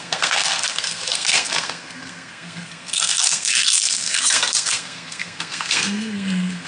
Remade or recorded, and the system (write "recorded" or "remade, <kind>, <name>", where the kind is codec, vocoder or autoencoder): remade, codec, SNAC